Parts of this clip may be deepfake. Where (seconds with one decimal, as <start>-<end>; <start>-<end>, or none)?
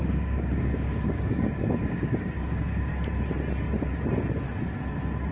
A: 0.0-2.9